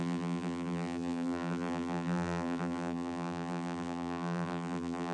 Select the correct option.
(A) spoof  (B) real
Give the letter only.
A